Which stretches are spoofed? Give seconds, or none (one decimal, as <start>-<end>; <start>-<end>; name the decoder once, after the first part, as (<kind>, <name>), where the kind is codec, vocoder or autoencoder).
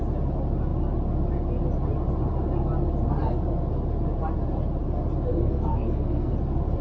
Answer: 5.3-6.3 (codec, SNAC)